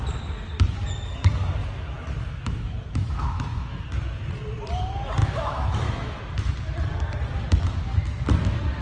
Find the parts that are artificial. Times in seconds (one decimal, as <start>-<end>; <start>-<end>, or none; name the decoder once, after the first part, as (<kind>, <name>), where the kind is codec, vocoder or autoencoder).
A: 1.6-3.8 (autoencoder, DAC-VAE); 5.2-6.2